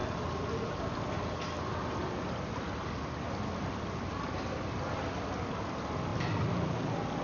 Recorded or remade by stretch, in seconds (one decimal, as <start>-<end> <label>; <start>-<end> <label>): 0.0-7.2 recorded